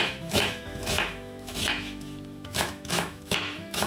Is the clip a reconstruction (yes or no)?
yes